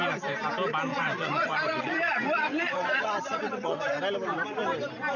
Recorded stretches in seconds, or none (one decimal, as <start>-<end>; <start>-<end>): 0.0-0.9; 4.0-5.2